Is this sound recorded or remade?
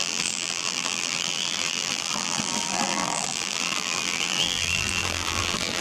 remade